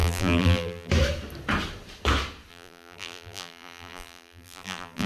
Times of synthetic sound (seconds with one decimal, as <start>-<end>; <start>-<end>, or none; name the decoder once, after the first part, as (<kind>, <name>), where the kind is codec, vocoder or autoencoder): 0.0-0.9 (vocoder, BigVGAN v2); 2.5-5.1

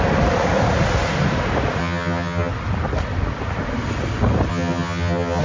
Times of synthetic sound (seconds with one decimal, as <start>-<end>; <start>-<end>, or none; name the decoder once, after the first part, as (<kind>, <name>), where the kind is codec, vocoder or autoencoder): 1.8-2.5 (vocoder, HiFi-GAN); 4.5-5.4